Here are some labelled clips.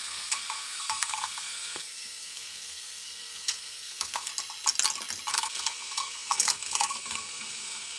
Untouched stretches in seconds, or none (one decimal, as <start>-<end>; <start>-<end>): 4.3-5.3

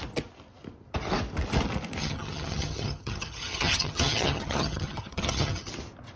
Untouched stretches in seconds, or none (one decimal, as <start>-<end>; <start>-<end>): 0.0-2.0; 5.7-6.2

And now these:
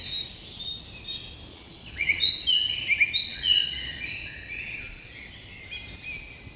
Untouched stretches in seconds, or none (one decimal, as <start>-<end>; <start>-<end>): 0.0-1.5; 2.3-3.3; 5.3-6.6